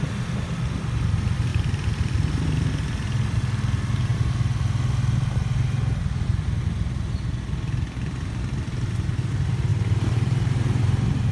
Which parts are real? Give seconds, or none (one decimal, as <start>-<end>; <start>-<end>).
0.0-1.5; 2.7-9.7